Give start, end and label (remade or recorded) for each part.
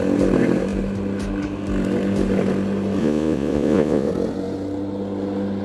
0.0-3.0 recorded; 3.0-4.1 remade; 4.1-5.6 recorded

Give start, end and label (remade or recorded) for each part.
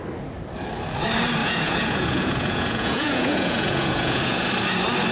0.0-1.4 recorded; 1.4-4.5 remade; 4.5-5.1 recorded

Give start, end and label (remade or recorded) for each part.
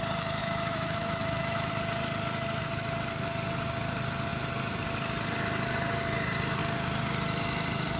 0.0-0.4 recorded; 0.4-1.7 remade; 1.7-8.0 recorded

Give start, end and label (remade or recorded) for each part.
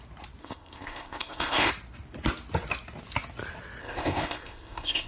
0.0-0.4 recorded; 0.4-1.7 remade; 1.7-3.8 recorded; 3.8-5.1 remade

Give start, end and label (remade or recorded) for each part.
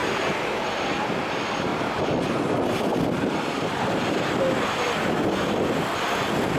0.0-6.6 recorded